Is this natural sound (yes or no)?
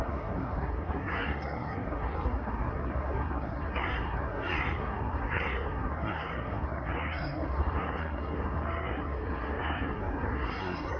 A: no